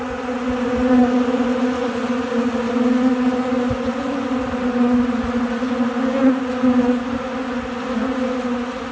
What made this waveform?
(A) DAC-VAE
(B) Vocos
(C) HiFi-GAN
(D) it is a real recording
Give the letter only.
D